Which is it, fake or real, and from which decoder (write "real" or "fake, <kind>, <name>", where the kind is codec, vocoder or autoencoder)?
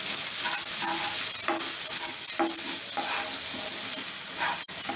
real